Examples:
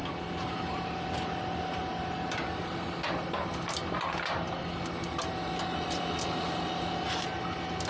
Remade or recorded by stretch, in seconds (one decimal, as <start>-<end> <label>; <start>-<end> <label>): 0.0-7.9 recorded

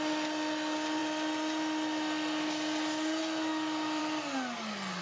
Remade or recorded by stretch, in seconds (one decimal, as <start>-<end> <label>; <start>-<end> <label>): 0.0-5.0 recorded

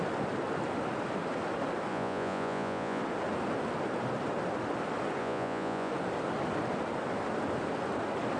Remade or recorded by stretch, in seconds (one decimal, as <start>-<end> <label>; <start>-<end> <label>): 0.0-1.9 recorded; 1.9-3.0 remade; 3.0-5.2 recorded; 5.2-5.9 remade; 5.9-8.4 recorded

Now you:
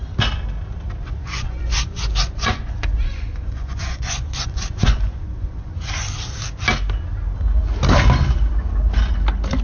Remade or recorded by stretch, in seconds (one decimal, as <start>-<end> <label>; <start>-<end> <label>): 0.0-1.2 recorded; 1.2-5.7 remade; 5.7-9.6 recorded